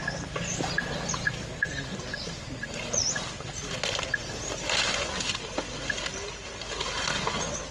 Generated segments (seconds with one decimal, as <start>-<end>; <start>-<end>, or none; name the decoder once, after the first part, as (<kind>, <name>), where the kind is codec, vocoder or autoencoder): 1.9-4.1 (vocoder, BigVGAN v2)